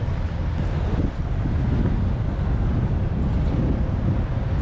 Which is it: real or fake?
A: real